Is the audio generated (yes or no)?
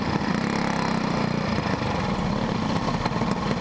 no